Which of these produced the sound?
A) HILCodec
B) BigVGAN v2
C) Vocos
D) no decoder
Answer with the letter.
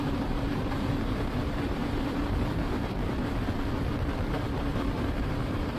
B